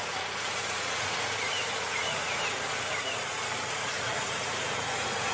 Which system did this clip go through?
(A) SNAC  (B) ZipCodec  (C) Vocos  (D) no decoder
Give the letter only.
C